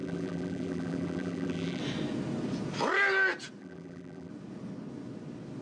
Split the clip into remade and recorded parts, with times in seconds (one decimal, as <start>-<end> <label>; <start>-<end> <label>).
0.0-1.8 remade; 1.8-3.6 recorded; 3.6-4.3 remade; 4.3-5.6 recorded